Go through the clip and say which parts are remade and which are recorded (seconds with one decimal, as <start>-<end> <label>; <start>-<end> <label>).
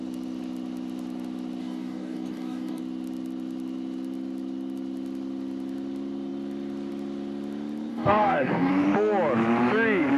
0.0-1.6 recorded; 1.6-2.8 remade; 2.8-7.9 recorded; 7.9-8.7 remade; 8.7-10.2 recorded